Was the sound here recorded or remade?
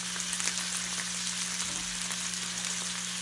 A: recorded